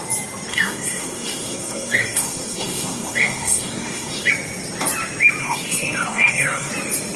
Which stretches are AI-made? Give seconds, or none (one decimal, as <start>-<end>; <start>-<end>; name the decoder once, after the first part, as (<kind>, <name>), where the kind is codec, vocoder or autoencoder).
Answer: 0.5-4.3 (codec, SNAC); 5.4-6.7